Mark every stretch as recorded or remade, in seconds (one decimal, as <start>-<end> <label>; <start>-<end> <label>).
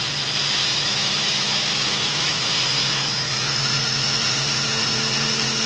0.0-0.6 recorded; 0.6-3.6 remade; 3.6-5.7 recorded